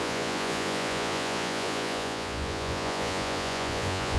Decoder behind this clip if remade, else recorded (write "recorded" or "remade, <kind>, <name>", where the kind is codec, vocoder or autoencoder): remade, vocoder, Vocos